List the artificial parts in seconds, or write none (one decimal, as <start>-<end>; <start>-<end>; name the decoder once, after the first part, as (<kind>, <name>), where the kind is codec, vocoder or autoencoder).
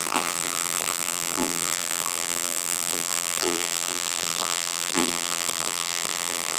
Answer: 0.0-6.6 (vocoder, BigVGAN v2)